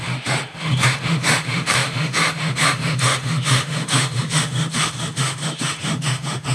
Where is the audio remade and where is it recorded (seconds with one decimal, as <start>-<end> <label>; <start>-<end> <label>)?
0.0-6.5 remade